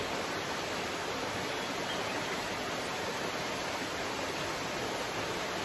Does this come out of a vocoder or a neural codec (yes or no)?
no